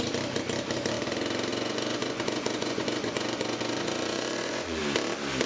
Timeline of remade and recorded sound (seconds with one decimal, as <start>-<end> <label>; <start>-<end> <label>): 0.0-1.5 recorded; 1.5-4.8 remade; 4.8-5.5 recorded